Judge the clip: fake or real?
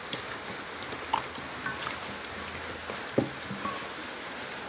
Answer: real